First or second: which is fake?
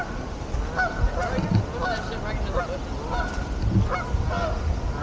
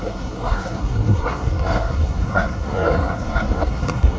second